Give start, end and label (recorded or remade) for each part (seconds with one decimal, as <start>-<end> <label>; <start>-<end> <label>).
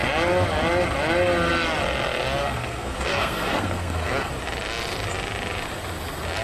0.0-2.4 recorded; 2.4-4.3 remade; 4.3-6.4 recorded